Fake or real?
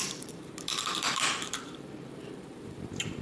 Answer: fake